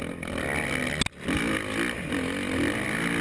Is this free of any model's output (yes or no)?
yes